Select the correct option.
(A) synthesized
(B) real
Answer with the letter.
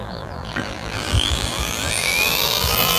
A